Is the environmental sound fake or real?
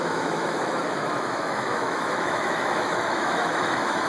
fake